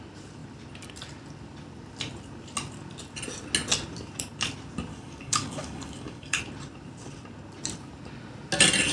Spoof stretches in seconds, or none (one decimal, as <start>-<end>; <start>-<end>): 4.9-6.4